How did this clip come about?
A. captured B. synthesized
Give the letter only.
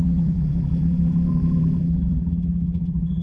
B